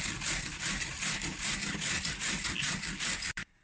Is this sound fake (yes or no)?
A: yes